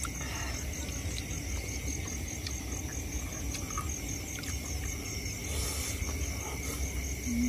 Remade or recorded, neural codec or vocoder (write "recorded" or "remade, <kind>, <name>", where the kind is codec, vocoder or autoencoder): recorded